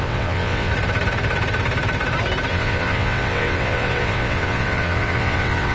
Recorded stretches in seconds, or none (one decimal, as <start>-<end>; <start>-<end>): 0.7-2.5